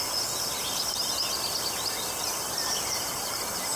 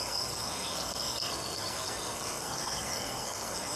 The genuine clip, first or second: first